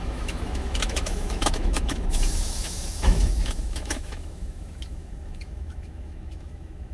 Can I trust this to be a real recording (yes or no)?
no